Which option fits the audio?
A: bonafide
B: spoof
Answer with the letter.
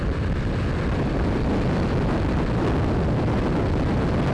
A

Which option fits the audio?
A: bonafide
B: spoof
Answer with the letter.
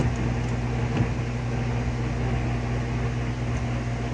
A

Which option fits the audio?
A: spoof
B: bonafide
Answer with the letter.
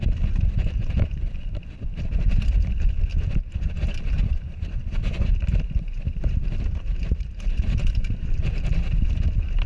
A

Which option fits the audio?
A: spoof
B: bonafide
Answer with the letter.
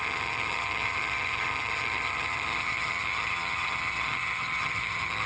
A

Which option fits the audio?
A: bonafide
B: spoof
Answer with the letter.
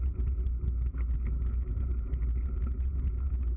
A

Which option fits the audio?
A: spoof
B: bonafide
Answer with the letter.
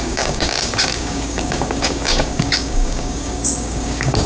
A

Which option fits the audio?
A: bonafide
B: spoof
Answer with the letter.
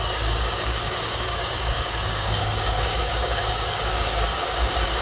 B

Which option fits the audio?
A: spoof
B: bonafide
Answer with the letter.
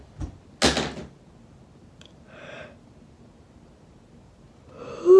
B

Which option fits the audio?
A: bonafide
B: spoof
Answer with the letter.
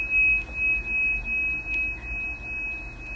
A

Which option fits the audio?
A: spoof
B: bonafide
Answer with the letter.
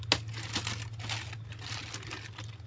B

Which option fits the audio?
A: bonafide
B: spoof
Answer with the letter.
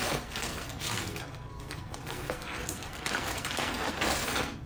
B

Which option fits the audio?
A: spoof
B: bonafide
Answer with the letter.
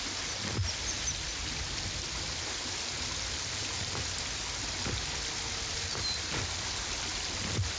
B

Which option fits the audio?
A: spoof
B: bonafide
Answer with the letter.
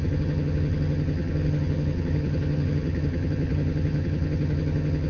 A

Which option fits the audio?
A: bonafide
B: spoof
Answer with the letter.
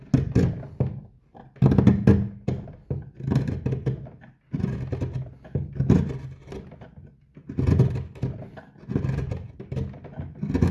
A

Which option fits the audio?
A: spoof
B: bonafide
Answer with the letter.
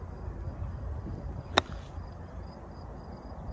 B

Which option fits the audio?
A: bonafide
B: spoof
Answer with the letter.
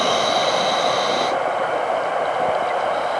A